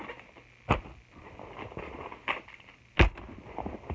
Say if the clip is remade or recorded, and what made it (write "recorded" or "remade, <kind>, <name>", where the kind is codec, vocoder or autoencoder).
recorded